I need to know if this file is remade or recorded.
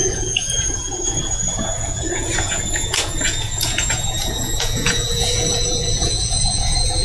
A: remade